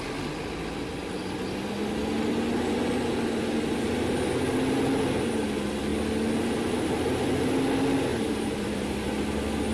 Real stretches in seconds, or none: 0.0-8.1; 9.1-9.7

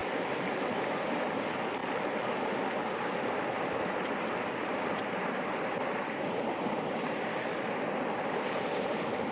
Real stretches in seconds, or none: 0.0-9.3

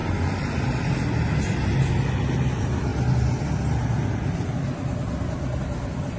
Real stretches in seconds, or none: 0.0-6.2

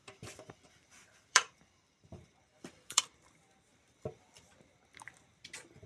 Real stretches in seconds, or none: 3.0-3.7; 4.5-5.9

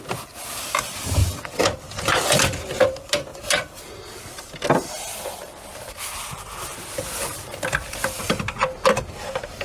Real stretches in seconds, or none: 0.0-1.2; 2.0-3.3; 3.8-5.7; 8.3-9.6